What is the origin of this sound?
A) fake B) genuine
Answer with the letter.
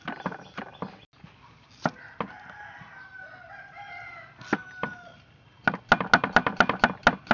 B